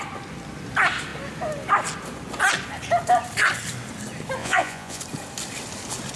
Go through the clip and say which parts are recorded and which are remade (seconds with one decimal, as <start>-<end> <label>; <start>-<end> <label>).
0.0-4.4 recorded; 4.4-5.0 remade; 5.0-6.2 recorded